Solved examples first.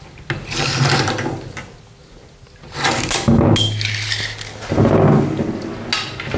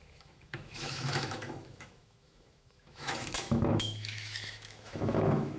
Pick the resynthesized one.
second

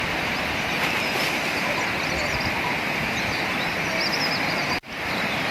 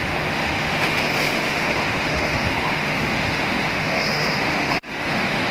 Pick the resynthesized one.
second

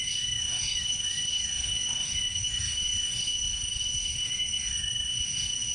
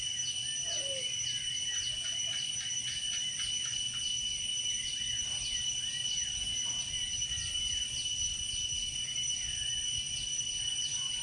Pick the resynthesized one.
first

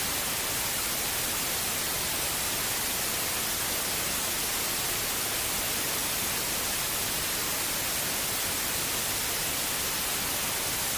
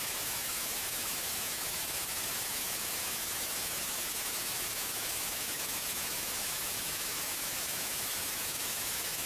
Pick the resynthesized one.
second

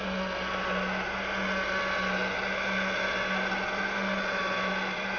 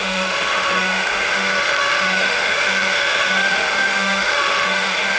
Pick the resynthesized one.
second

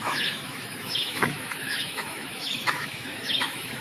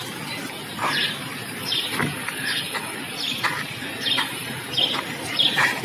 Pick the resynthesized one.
first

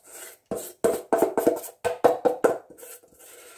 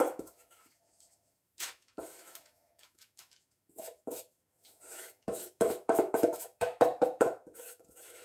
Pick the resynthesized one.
second